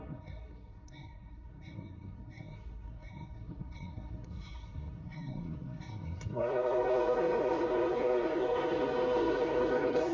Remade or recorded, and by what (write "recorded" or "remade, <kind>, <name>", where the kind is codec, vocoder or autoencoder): remade, codec, SNAC